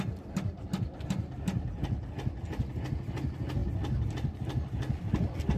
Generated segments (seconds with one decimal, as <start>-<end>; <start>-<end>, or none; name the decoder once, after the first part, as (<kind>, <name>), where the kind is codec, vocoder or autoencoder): none